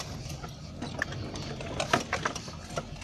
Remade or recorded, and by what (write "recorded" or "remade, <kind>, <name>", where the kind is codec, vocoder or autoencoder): recorded